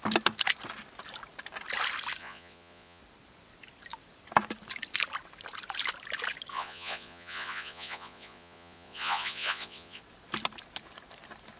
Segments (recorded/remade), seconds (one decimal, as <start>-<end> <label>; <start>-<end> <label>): 0.0-2.2 recorded; 2.2-3.0 remade; 3.0-6.5 recorded; 6.5-10.0 remade; 10.0-11.6 recorded